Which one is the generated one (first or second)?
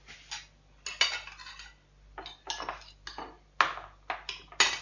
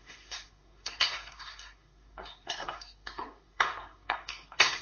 second